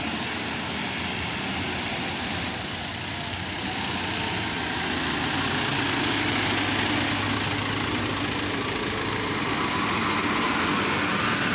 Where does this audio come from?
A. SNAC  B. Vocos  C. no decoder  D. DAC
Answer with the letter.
C